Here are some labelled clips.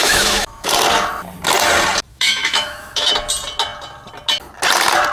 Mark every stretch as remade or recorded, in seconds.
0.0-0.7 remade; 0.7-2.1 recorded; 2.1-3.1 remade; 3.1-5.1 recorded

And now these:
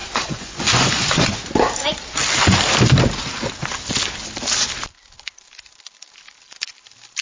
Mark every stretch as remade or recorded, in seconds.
0.0-1.4 remade; 1.4-7.2 recorded

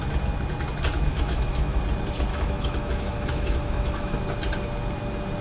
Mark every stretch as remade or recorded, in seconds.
0.0-1.1 recorded; 1.1-1.8 remade; 1.8-2.3 recorded; 2.3-4.2 remade; 4.2-5.4 recorded